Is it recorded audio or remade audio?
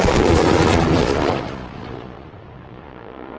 remade